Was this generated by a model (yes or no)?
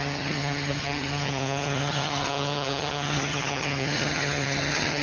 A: yes